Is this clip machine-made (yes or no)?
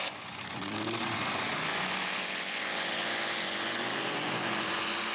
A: yes